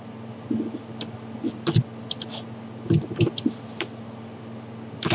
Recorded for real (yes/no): yes